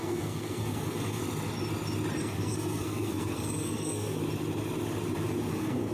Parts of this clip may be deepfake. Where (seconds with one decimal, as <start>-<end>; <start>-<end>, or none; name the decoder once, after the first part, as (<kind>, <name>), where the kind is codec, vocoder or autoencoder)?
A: 0.0-1.2 (codec, SNAC); 2.2-4.2; 5.5-5.9